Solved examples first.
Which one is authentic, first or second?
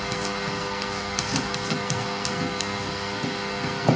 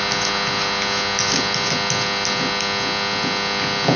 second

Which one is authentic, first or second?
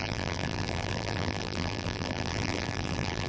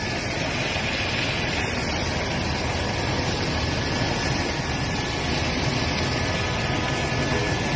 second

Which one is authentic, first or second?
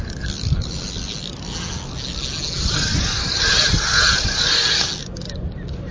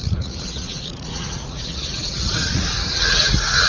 first